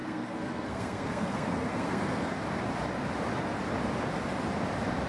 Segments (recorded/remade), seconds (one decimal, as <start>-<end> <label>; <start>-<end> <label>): 0.0-2.3 remade; 2.3-5.1 recorded